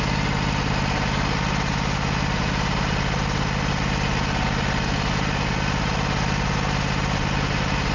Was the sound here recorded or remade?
recorded